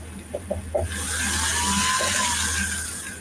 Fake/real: real